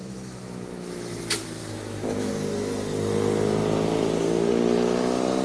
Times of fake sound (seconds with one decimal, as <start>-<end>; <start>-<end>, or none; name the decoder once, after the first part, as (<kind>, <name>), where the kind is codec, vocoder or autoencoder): 0.0-1.2 (autoencoder, DAC-VAE); 1.6-2.3